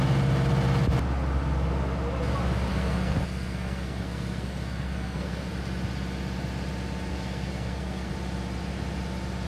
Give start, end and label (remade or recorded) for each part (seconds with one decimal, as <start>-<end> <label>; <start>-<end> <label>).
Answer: 0.0-2.7 recorded; 2.7-5.5 remade; 5.5-7.1 recorded; 7.1-8.1 remade; 8.1-9.5 recorded